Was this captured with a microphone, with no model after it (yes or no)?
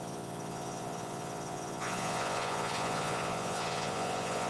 no